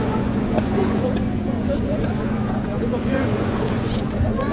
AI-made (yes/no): yes